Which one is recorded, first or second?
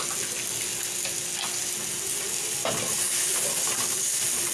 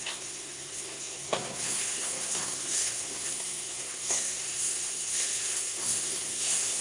first